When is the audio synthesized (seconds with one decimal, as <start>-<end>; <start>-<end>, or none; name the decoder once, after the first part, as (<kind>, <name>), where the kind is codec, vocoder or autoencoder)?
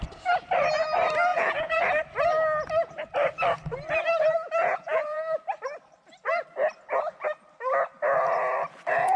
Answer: 1.3-1.8 (vocoder, Vocos); 4.6-5.2